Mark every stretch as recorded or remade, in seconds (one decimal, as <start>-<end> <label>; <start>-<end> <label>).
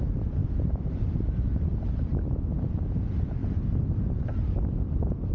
0.0-0.4 remade; 0.4-0.9 recorded; 0.9-2.1 remade; 2.1-2.7 recorded; 2.7-3.4 remade; 3.4-5.3 recorded